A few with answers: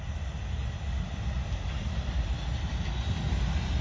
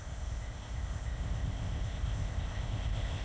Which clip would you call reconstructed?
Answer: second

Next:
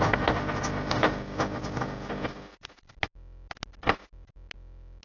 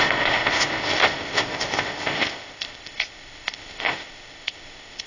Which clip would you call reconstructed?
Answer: second